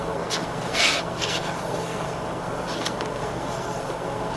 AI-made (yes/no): yes